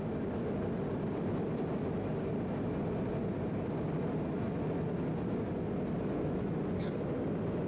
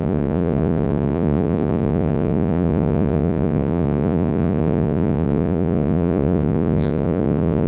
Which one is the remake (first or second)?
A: second